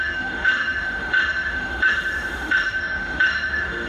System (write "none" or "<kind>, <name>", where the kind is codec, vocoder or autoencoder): autoencoder, DAC-VAE